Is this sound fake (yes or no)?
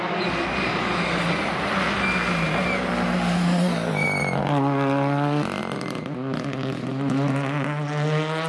no